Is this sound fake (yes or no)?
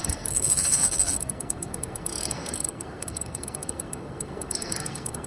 yes